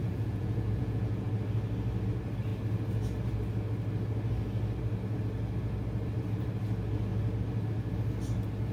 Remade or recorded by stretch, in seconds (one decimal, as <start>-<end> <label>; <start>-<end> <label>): 0.0-1.3 remade; 1.3-8.7 recorded